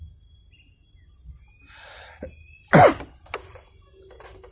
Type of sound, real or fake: real